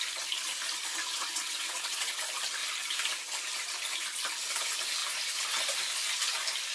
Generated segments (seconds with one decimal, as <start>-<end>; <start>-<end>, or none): 1.1-2.2